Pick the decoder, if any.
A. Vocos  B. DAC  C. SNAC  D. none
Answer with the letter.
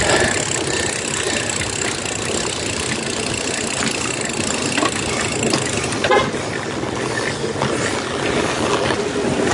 D